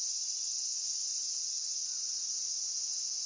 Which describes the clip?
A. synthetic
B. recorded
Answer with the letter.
B